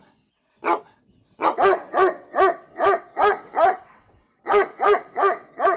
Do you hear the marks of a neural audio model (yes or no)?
yes